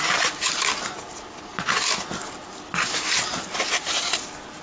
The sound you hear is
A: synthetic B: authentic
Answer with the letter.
B